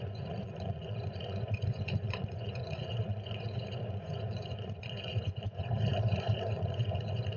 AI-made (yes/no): yes